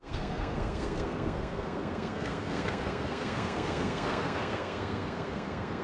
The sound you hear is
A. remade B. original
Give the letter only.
A